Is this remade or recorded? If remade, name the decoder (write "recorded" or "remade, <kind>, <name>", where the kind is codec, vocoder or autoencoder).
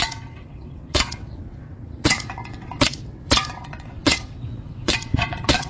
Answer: remade, vocoder, WaveNeXt